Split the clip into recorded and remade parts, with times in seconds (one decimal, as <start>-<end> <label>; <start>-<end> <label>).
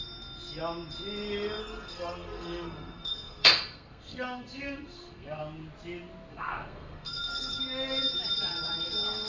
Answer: 0.0-1.6 recorded; 1.6-5.4 remade; 5.4-6.3 recorded; 6.3-7.6 remade; 7.6-9.3 recorded